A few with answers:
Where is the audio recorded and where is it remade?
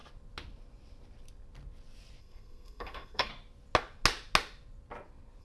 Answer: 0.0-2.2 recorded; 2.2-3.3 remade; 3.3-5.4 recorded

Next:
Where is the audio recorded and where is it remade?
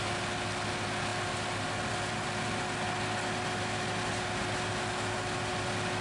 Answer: 0.0-6.0 recorded